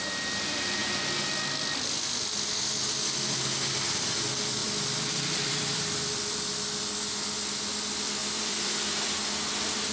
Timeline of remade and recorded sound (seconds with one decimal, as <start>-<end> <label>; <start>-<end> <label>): 0.0-4.6 recorded; 4.6-6.8 remade; 6.8-8.2 recorded; 8.2-8.7 remade; 8.7-9.9 recorded